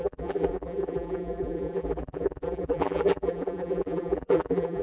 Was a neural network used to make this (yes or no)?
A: yes